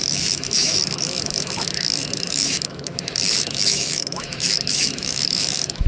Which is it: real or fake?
fake